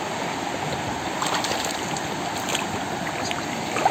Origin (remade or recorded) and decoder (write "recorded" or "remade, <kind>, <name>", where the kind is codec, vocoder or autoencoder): recorded